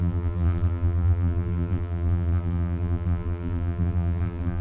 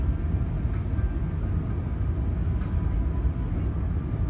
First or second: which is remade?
first